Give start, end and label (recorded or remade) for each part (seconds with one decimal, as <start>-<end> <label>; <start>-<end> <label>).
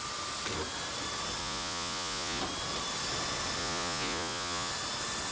0.0-1.4 recorded; 1.4-2.4 remade; 2.4-3.6 recorded; 3.6-4.7 remade; 4.7-5.3 recorded